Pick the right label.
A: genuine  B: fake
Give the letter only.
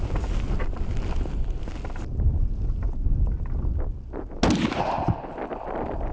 A